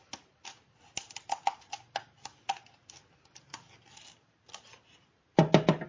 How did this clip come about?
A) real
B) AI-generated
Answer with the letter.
A